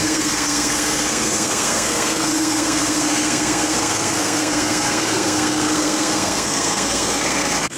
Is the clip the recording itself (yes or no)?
no